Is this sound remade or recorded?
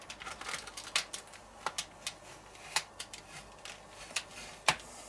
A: recorded